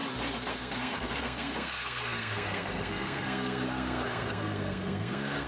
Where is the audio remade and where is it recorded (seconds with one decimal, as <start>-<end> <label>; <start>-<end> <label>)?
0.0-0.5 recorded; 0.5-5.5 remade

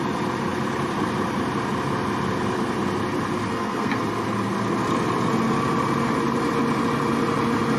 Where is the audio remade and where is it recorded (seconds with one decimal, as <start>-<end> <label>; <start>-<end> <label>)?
0.0-3.5 recorded; 3.5-4.0 remade; 4.0-7.8 recorded

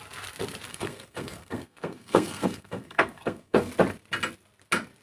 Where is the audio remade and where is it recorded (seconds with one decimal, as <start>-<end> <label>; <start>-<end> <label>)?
0.0-0.7 recorded; 0.7-3.7 remade; 3.7-5.0 recorded